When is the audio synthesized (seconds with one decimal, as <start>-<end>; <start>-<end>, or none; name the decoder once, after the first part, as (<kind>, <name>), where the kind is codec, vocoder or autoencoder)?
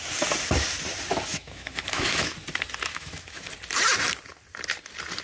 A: 1.3-2.3 (autoencoder, DAC-VAE); 2.9-3.5